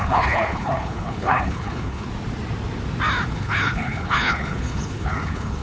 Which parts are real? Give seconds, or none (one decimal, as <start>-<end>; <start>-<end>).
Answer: 2.1-3.3